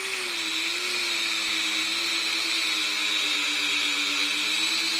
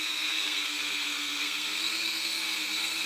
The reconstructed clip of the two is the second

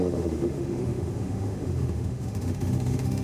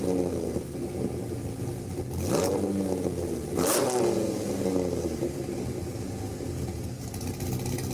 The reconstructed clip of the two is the first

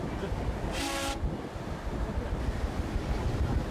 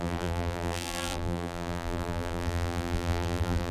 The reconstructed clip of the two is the second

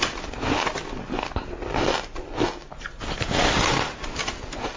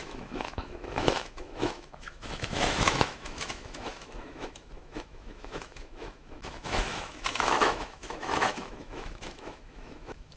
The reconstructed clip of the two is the second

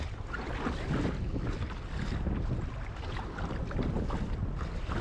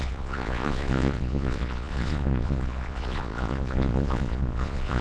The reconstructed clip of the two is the second